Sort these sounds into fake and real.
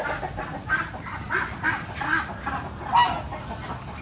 real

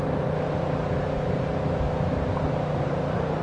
fake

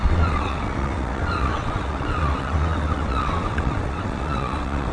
fake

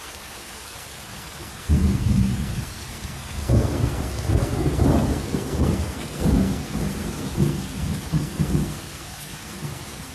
fake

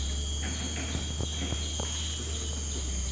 real